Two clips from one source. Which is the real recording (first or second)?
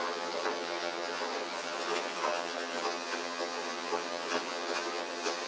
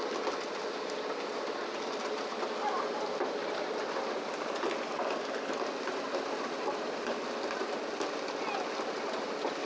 second